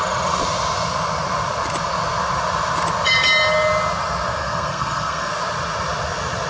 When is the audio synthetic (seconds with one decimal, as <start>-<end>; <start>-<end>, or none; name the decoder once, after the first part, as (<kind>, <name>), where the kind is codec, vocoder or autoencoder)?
4.4-5.3 (codec, SNAC)